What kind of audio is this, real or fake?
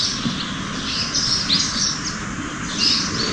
real